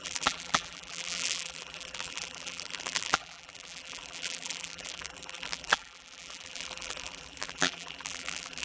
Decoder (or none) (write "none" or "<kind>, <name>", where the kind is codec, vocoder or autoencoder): vocoder, BigVGAN v2